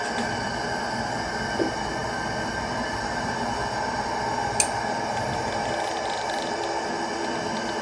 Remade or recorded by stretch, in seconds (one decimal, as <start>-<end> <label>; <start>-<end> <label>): 0.0-7.8 recorded